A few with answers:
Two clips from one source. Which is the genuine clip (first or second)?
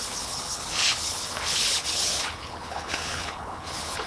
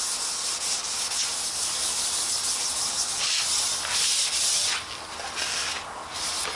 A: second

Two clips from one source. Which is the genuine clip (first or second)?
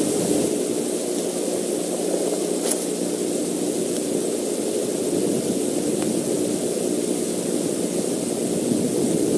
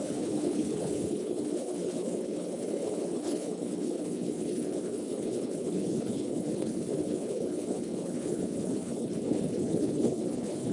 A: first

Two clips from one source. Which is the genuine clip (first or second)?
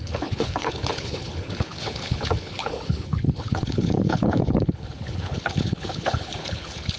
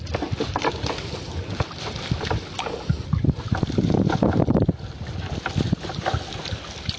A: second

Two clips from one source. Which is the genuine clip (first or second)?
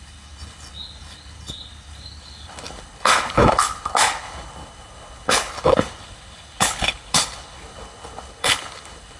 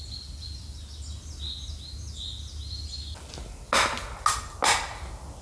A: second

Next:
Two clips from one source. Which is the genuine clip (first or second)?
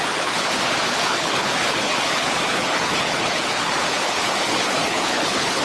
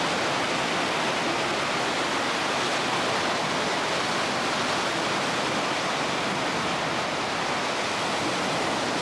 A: second